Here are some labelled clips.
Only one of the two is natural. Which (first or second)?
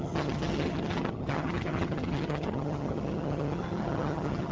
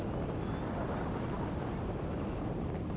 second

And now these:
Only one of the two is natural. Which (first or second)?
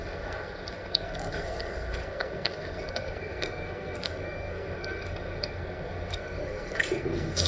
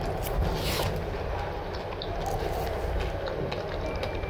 second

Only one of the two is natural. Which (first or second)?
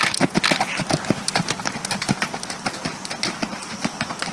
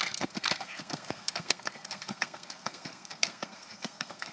first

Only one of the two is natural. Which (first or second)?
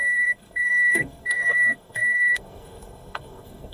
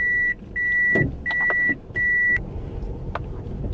second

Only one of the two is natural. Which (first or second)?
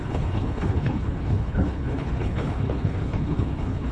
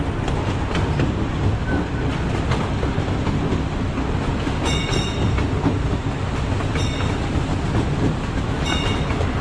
second